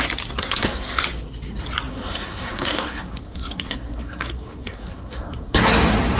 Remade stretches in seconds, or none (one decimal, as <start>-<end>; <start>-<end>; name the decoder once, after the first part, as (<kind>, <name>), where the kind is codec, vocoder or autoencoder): 0.4-1.0 (codec, SNAC); 1.9-5.6